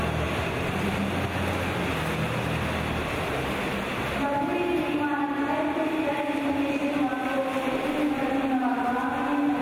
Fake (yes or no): no